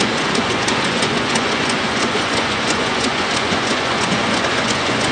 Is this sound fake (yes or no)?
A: yes